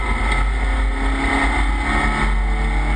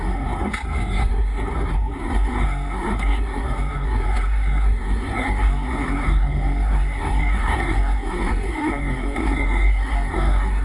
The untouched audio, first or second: first